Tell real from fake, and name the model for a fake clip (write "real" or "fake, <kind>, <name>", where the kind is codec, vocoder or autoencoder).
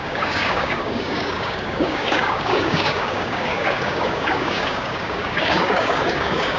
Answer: fake, codec, DAC